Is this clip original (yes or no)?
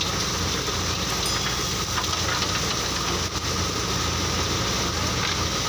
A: yes